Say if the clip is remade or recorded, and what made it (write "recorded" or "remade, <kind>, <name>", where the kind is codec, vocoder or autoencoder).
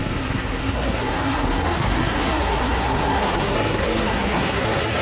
remade, codec, SNAC